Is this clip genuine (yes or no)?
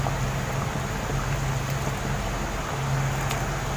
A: yes